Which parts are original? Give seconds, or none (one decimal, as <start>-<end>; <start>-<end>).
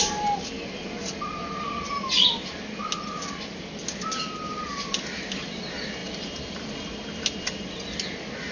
0.0-8.5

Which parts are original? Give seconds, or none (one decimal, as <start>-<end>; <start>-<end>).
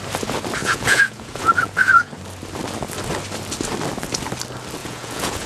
0.0-0.6; 2.1-4.8